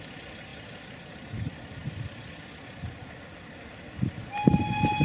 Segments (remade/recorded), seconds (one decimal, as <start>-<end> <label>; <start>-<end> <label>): 0.0-5.0 recorded